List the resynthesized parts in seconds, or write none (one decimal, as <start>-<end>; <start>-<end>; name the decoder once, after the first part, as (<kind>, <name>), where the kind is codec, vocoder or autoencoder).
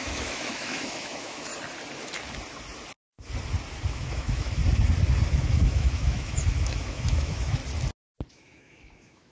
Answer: 0.0-1.5 (autoencoder, DAC-VAE); 3.9-4.6; 5.3-7.6; 8.3-9.3